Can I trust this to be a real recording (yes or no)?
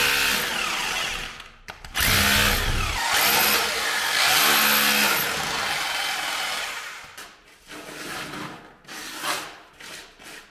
yes